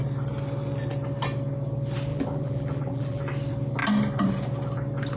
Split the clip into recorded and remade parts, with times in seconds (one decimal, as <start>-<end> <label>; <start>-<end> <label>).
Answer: 0.0-2.1 recorded; 2.1-3.2 remade; 3.2-5.2 recorded

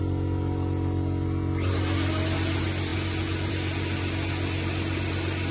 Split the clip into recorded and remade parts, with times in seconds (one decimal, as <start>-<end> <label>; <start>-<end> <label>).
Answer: 0.0-5.5 recorded

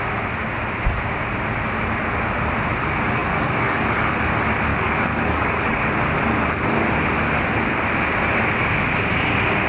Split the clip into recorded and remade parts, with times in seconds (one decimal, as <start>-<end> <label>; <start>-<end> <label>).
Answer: 0.0-3.2 recorded; 3.2-4.2 remade; 4.2-4.7 recorded; 4.7-5.9 remade; 5.9-9.7 recorded

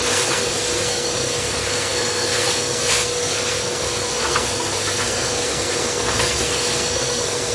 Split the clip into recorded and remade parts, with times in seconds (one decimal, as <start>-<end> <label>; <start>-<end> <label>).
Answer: 0.0-7.5 remade